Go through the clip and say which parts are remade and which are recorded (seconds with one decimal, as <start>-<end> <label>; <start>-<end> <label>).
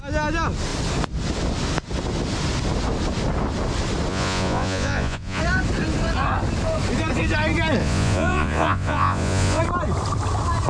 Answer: 0.0-4.1 recorded; 4.1-5.4 remade; 5.4-7.8 recorded; 7.8-9.6 remade; 9.6-10.7 recorded